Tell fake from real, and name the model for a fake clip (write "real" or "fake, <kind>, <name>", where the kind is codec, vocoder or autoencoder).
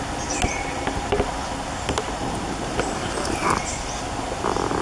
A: real